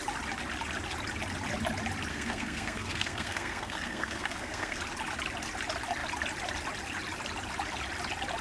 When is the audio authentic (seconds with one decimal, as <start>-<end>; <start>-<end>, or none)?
0.0-2.1; 4.8-8.4